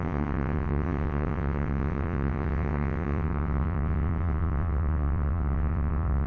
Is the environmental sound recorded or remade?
remade